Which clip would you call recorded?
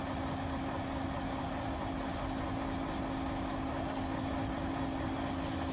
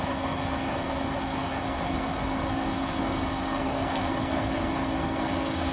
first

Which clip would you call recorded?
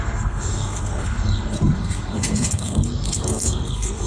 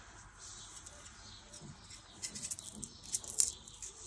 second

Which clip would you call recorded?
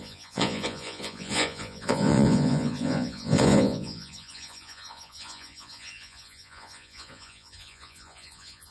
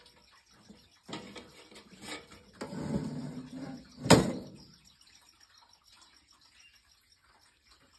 second